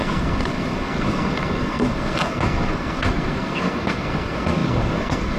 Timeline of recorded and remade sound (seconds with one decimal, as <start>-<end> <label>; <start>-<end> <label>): 0.0-5.4 remade